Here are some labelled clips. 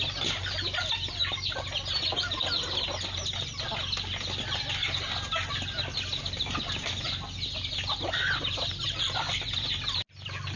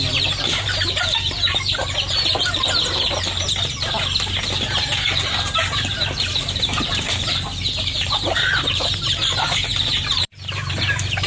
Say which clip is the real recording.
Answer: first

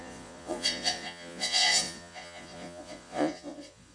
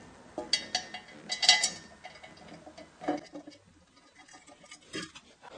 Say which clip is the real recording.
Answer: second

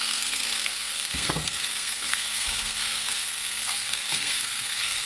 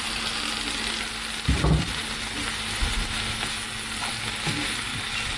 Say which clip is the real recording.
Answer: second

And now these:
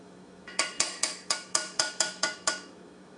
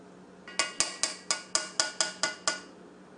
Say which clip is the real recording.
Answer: second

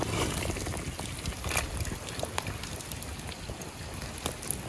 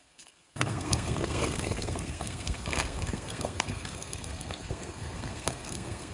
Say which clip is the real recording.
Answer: first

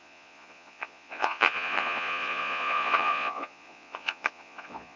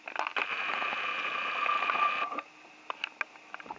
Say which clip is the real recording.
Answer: second